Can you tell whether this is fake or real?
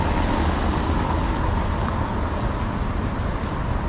real